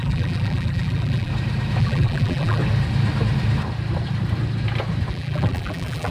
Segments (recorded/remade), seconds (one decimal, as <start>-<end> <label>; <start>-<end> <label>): 0.0-1.3 remade; 1.3-1.8 recorded; 1.8-2.6 remade; 2.6-5.1 recorded; 5.1-6.1 remade

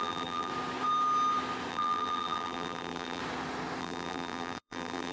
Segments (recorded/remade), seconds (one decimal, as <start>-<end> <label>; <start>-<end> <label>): 0.0-0.5 remade; 0.5-1.7 recorded; 1.7-3.2 remade; 3.2-3.8 recorded; 3.8-5.1 remade

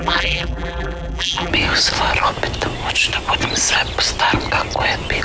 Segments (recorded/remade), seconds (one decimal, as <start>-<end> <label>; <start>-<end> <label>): 0.0-1.5 remade; 1.5-5.2 recorded

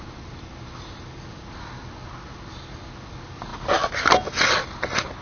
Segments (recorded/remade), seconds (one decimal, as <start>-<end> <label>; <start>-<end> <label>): 0.0-5.2 recorded

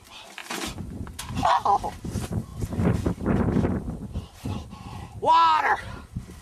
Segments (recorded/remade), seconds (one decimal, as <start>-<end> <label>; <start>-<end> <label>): 0.0-6.4 recorded

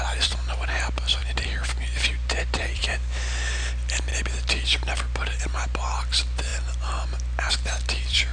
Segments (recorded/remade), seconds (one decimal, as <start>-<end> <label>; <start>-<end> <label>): 0.0-4.1 remade; 4.1-5.4 recorded; 5.4-6.5 remade; 6.5-7.5 recorded; 7.5-8.3 remade